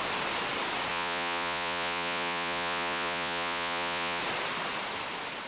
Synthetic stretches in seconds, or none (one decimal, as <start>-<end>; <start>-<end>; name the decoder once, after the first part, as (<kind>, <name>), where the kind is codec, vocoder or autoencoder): 0.9-4.2 (vocoder, Vocos)